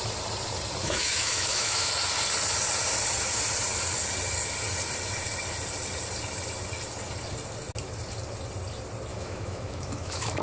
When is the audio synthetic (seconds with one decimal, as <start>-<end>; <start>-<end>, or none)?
0.8-1.9; 9.1-10.4